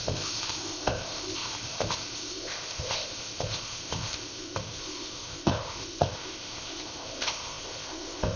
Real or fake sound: fake